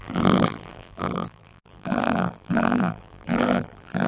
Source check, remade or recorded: remade